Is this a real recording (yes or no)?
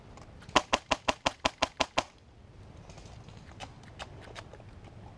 yes